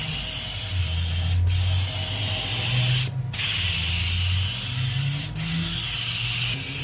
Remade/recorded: recorded